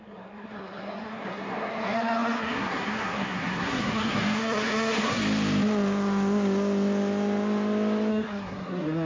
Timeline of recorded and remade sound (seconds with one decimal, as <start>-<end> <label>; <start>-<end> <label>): 0.0-5.2 remade; 5.2-8.1 recorded; 8.1-9.1 remade